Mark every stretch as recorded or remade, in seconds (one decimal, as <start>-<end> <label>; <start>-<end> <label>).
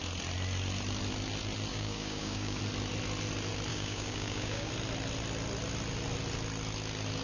0.0-1.7 recorded; 1.7-2.6 remade; 2.6-3.7 recorded; 3.7-4.7 remade; 4.7-7.2 recorded